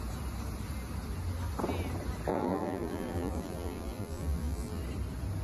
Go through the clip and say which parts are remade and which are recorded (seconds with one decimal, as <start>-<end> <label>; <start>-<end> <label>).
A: 0.0-2.3 recorded; 2.3-4.8 remade; 4.8-5.4 recorded